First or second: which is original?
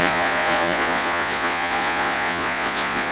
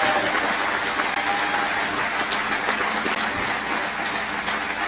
second